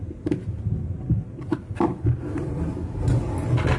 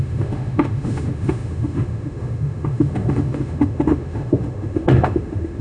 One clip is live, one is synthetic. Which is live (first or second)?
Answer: first